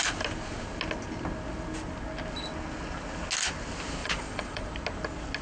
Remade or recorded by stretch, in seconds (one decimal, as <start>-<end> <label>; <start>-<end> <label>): 0.0-4.0 recorded; 4.0-4.7 remade; 4.7-5.4 recorded

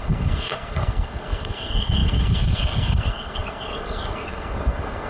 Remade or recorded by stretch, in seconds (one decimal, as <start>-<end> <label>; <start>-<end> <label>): 0.0-5.1 remade

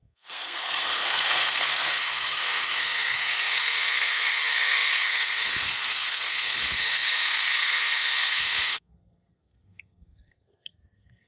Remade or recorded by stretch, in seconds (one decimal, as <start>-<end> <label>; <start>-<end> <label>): 0.0-11.3 remade

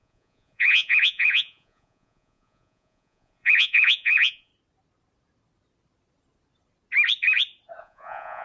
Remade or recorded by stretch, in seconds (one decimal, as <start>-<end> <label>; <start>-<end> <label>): 0.0-4.5 remade; 4.5-7.8 recorded; 7.8-8.4 remade

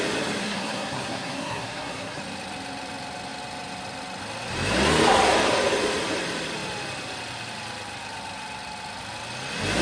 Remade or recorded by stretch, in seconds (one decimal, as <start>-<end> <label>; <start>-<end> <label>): 0.0-0.4 recorded; 0.4-2.2 remade; 2.2-9.8 recorded